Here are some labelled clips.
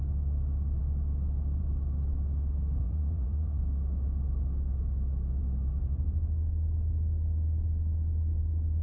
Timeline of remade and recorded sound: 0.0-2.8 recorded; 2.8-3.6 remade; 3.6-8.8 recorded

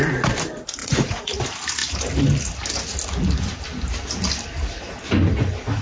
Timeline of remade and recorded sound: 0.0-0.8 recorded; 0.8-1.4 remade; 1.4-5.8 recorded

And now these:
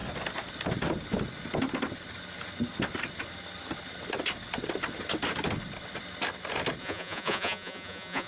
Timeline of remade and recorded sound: 0.0-6.8 recorded; 6.8-8.3 remade

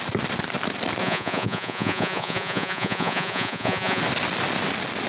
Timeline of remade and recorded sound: 0.0-1.0 recorded; 1.0-4.0 remade; 4.0-5.1 recorded

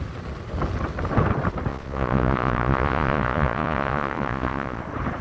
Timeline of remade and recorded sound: 0.0-1.7 recorded; 1.7-4.8 remade; 4.8-5.2 recorded

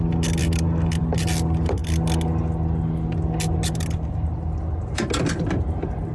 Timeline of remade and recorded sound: 0.0-6.1 recorded

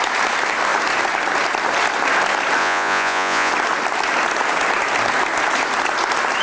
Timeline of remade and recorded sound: 0.0-2.6 recorded; 2.6-3.5 remade; 3.5-6.4 recorded